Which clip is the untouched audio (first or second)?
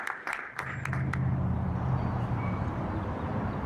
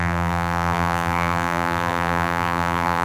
first